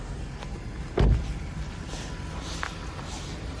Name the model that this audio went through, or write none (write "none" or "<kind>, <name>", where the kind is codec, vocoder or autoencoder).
none